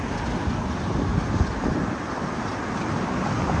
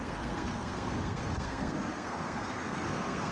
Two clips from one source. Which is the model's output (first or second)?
second